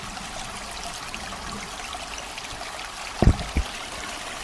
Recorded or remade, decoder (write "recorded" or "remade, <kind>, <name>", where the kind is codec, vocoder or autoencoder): recorded